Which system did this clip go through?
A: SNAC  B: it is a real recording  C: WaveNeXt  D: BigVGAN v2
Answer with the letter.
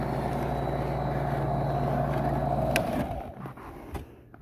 B